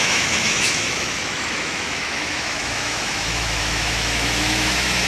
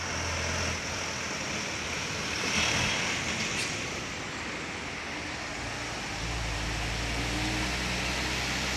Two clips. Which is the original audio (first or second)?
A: second